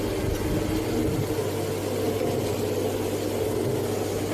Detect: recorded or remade recorded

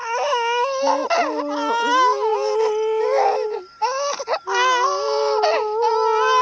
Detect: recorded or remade recorded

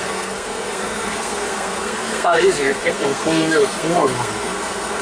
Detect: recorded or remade remade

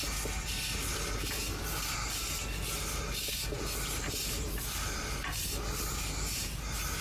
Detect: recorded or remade recorded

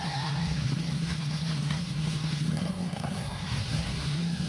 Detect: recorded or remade remade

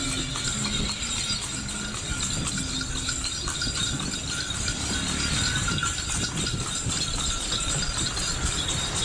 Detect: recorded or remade recorded